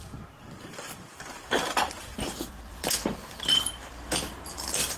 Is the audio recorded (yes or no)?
no